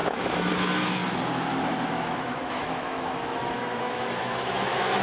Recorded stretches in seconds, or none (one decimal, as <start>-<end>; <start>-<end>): 0.0-0.5; 1.0-1.9